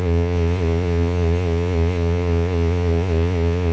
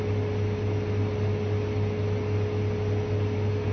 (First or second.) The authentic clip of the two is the second